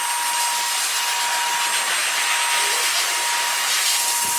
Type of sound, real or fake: real